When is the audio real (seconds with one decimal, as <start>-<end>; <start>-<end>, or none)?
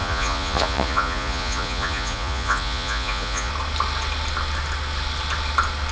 3.5-5.9